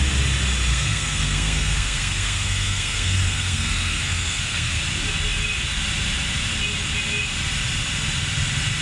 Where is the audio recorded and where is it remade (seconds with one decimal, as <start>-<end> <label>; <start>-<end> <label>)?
0.0-0.7 recorded; 0.7-4.8 remade; 4.8-8.8 recorded